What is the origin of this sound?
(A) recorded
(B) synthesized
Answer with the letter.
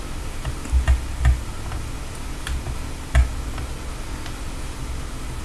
A